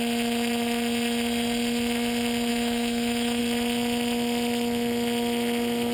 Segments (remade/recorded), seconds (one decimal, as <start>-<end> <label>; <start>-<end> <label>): 0.0-2.5 recorded; 2.5-3.4 remade; 3.4-5.9 recorded